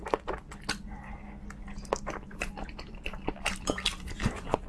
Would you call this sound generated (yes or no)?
no